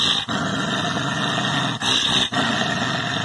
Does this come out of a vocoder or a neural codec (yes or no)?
no